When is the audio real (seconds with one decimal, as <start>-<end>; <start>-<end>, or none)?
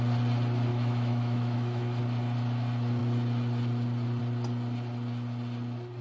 0.0-0.7; 2.0-6.0